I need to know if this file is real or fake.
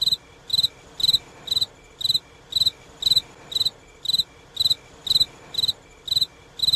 real